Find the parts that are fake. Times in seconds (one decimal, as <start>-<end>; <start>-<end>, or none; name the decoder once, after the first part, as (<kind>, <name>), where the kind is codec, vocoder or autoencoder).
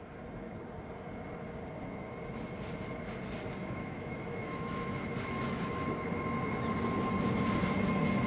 3.6-5.6 (autoencoder, DAC-VAE)